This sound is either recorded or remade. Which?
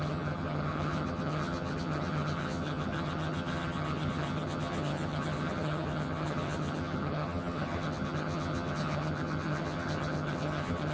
remade